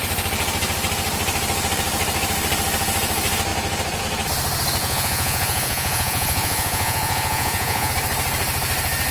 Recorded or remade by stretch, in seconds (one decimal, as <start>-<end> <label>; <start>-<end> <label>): 0.0-4.8 recorded; 4.8-7.9 remade; 7.9-9.1 recorded